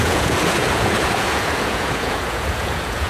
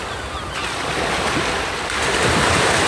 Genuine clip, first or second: second